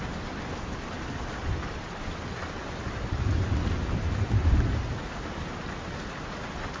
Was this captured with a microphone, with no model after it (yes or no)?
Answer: yes